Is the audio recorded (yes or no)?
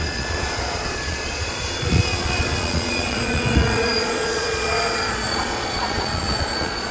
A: no